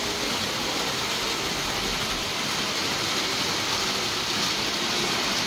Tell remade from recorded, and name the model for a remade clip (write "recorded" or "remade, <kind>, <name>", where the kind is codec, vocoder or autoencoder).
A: recorded